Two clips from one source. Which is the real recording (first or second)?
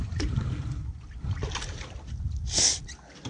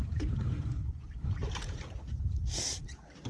first